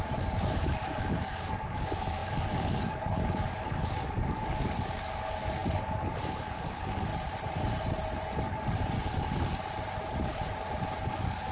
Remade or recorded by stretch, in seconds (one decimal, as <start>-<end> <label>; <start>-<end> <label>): 0.0-7.1 remade; 7.1-11.0 recorded; 11.0-11.5 remade